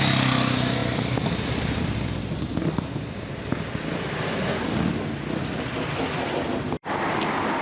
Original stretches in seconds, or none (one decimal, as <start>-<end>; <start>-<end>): 0.0-7.6